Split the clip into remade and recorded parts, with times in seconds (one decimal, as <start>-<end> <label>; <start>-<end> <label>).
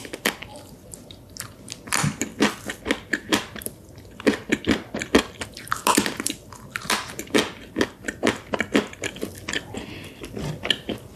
0.0-11.2 recorded